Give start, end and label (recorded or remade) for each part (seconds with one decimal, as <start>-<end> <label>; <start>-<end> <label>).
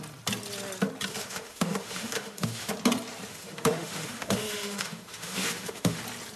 0.0-1.1 recorded; 1.1-2.7 remade; 2.7-3.3 recorded; 3.3-6.0 remade; 6.0-6.4 recorded